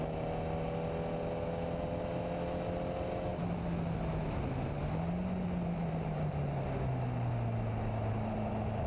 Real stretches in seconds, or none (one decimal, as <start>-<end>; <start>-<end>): 0.0-8.9